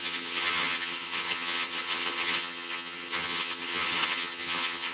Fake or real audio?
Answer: fake